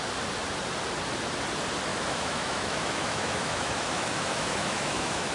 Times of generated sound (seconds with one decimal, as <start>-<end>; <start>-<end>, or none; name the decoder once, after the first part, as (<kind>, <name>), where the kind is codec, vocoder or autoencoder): 1.9-5.3 (autoencoder, DAC-VAE)

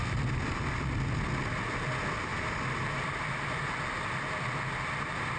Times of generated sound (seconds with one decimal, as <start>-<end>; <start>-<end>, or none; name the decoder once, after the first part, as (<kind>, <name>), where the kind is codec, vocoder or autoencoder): none

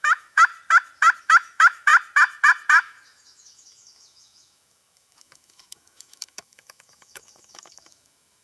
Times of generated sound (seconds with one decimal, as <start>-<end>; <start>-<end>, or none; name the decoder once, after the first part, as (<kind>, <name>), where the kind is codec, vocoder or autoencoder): 0.0-0.5 (autoencoder, DAC-VAE); 1.2-1.9; 2.8-8.4

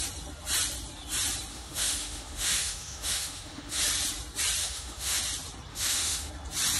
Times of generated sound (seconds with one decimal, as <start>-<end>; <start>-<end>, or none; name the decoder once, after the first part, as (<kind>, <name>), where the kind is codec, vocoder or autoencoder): 1.5-3.8 (autoencoder, DAC-VAE); 4.6-5.2; 5.7-6.3

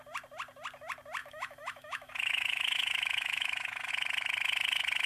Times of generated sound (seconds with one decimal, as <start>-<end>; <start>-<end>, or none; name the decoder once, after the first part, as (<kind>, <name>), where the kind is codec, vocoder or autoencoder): 1.2-3.9 (autoencoder, DAC-VAE)

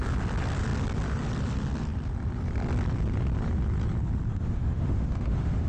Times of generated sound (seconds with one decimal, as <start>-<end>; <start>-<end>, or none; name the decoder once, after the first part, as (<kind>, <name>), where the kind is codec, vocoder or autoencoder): 4.3-5.7 (autoencoder, DAC-VAE)

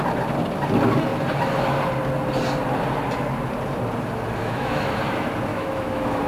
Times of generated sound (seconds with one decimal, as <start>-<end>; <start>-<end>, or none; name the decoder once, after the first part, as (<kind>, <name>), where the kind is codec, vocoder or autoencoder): 4.4-5.0 (autoencoder, DAC-VAE); 5.5-6.3

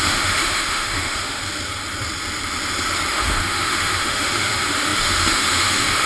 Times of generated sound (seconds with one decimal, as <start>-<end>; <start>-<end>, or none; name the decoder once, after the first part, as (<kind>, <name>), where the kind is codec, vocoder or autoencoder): 0.0-1.4 (autoencoder, DAC-VAE); 3.1-6.1